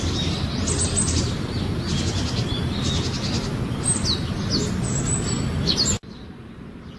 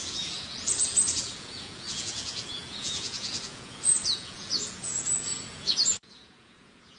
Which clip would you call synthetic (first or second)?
second